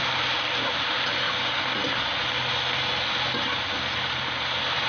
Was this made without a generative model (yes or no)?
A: yes